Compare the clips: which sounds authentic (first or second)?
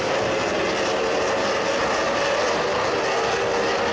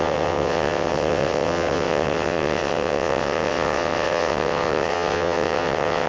first